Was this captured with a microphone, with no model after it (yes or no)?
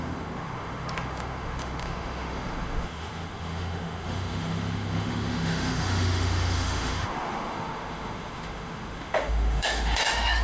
no